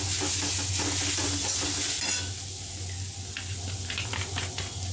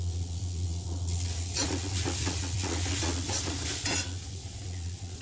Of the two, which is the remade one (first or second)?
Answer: second